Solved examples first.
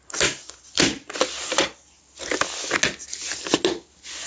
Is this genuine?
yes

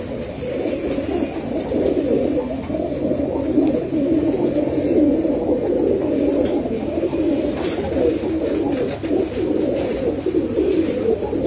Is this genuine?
yes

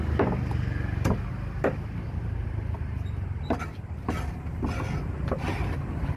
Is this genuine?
yes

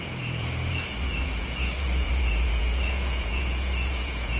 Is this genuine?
no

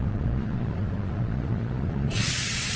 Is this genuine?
no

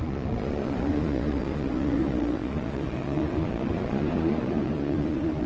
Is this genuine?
no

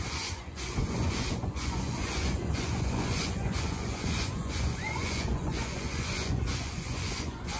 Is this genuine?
no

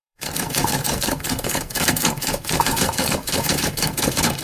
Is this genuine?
no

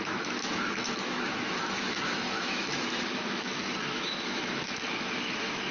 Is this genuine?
no